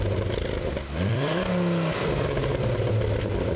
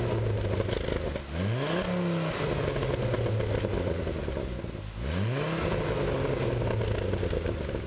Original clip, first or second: second